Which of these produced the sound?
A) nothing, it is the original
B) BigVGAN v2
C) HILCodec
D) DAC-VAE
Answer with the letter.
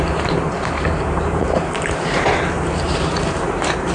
B